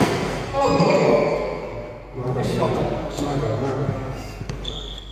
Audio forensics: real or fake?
fake